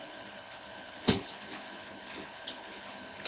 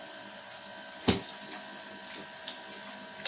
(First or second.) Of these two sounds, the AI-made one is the first